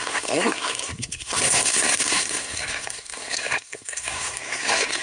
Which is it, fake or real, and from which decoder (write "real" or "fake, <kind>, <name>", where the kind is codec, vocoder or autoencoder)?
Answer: fake, codec, SNAC